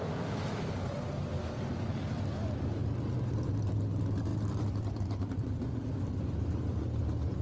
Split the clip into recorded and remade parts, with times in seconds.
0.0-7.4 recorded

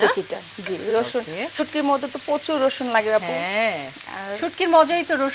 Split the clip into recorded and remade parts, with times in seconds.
0.0-0.9 recorded; 0.9-1.6 remade; 1.6-5.3 recorded

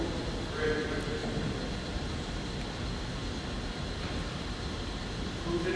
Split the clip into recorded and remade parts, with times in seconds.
0.0-5.8 recorded

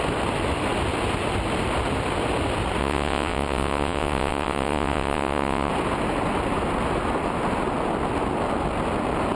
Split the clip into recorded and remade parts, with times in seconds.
0.0-2.8 recorded; 2.8-5.7 remade; 5.7-9.4 recorded

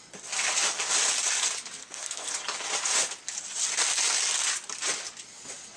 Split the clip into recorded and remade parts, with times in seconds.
0.0-1.8 recorded; 1.8-2.3 remade; 2.3-5.8 recorded

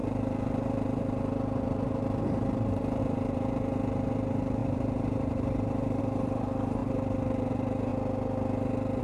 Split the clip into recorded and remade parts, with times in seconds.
0.0-7.9 remade; 7.9-9.0 recorded